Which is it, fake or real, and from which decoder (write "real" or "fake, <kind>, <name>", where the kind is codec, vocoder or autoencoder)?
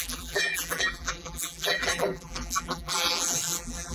fake, vocoder, BigVGAN v2